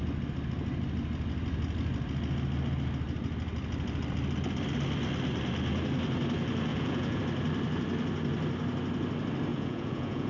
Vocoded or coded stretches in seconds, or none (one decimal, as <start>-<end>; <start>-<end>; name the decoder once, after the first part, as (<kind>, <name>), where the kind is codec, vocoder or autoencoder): 6.7-7.2 (vocoder, Vocos); 9.5-10.3